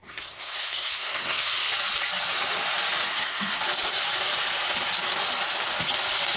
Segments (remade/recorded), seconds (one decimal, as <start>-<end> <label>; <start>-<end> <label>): 0.0-1.7 remade; 1.7-3.1 recorded; 3.1-3.6 remade; 3.6-6.4 recorded